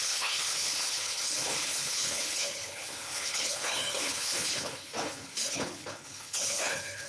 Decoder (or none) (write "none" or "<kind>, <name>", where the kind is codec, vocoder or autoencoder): codec, HILCodec